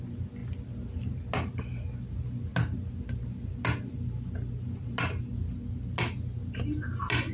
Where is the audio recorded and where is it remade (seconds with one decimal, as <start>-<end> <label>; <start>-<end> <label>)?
0.0-7.3 recorded